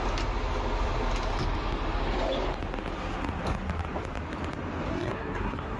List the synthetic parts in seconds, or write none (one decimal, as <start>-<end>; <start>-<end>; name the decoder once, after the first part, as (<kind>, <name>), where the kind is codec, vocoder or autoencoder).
4.9-5.8 (codec, SNAC)